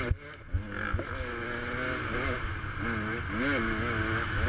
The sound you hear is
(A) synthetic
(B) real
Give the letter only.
B